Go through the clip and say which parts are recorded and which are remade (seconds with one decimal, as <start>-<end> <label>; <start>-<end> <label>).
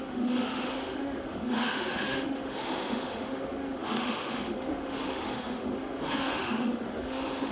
0.0-7.5 remade